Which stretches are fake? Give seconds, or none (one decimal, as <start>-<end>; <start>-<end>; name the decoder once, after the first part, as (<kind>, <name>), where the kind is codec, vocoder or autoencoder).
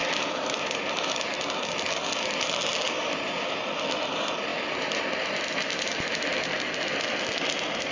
0.0-1.4 (vocoder, BigVGAN v2); 2.7-3.3; 4.5-6.0